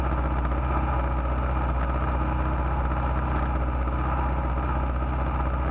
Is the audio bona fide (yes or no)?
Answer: yes